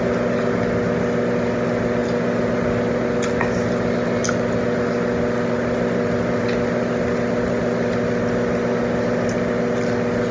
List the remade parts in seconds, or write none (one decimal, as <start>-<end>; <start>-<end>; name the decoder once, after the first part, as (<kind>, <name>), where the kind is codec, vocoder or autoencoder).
none